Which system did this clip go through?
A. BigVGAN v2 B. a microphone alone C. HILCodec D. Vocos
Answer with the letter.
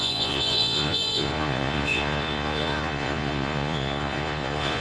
D